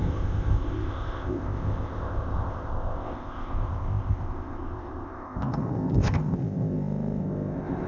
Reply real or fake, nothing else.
fake